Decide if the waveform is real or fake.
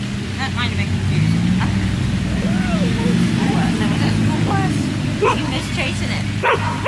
real